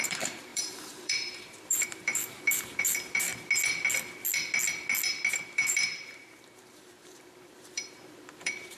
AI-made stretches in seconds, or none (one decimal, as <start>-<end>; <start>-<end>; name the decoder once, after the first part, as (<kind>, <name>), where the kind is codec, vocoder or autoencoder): 0.0-3.3 (vocoder, BigVGAN v2); 5.3-8.8